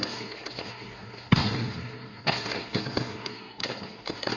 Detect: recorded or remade remade